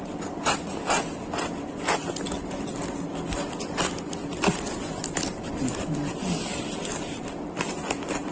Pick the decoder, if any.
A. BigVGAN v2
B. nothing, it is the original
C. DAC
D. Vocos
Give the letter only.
B